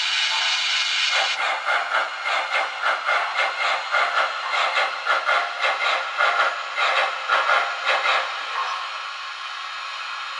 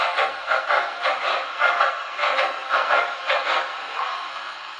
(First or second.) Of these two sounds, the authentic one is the first